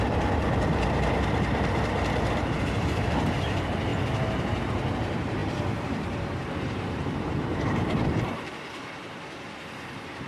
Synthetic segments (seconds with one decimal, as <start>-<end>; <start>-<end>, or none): 0.0-3.9; 4.6-10.3